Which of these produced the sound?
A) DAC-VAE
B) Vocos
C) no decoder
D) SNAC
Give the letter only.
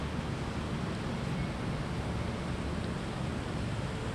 C